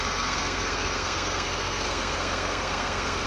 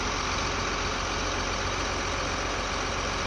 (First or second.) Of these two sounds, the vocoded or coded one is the first